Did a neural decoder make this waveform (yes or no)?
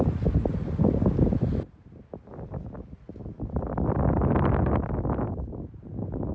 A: no